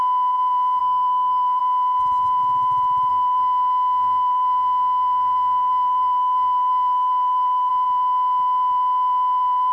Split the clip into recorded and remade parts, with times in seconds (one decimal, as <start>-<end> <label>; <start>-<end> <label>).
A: 0.0-0.8 recorded; 0.8-1.6 remade; 1.6-3.1 recorded; 3.1-7.7 remade; 7.7-9.7 recorded